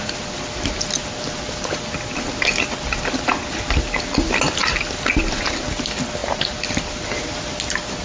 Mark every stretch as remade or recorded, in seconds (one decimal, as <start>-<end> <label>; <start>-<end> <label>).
0.0-8.0 recorded